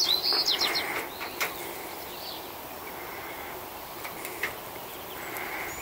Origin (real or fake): real